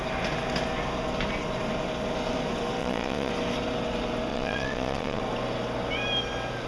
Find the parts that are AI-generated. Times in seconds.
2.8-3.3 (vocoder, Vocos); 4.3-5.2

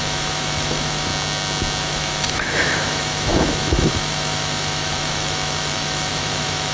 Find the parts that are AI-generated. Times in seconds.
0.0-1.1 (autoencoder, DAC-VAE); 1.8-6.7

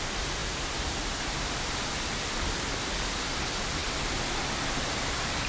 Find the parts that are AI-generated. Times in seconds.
none

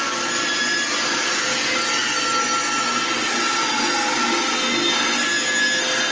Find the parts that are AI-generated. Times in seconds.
none

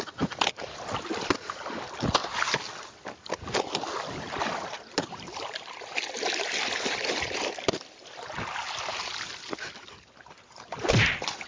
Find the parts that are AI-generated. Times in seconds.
none